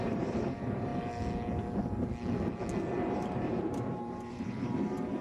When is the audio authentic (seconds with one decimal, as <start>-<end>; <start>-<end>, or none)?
0.9-3.0